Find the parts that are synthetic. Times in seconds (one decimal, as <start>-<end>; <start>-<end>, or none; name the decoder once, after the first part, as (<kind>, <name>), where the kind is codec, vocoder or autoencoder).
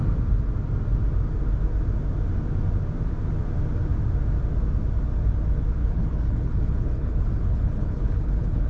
5.8-8.7 (codec, HILCodec)